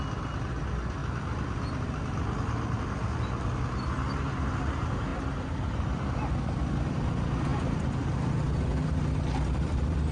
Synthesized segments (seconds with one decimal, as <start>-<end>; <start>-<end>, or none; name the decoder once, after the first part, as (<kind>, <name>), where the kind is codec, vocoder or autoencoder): 5.1-5.8 (vocoder, BigVGAN v2); 7.5-10.1